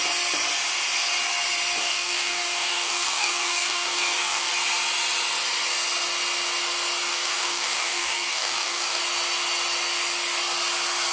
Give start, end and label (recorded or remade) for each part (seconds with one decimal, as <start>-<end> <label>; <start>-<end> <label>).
0.0-1.8 recorded; 1.8-4.5 remade; 4.5-7.1 recorded; 7.1-9.0 remade; 9.0-11.1 recorded